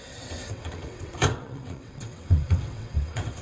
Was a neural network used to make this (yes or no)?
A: yes